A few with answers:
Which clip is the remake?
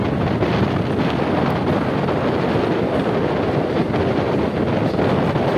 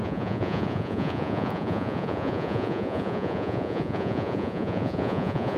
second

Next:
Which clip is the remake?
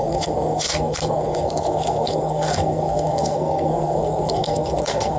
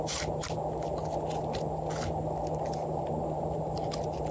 first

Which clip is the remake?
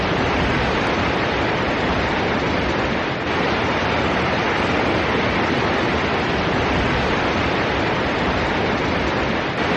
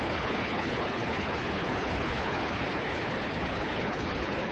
second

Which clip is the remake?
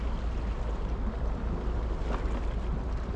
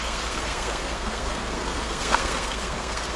second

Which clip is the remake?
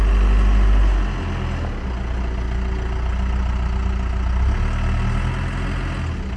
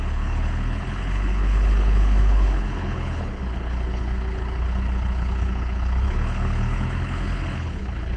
second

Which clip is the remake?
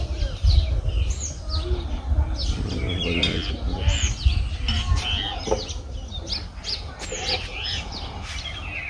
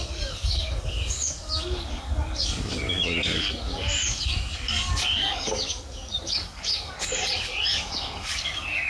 second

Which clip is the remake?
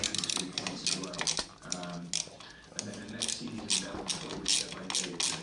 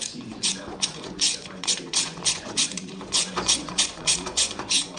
second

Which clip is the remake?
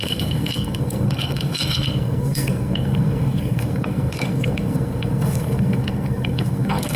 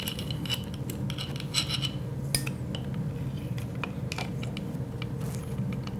first